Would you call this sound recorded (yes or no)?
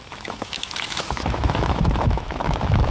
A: no